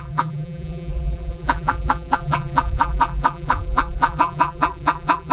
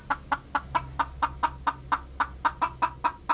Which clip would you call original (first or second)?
second